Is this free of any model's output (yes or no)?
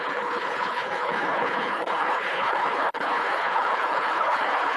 no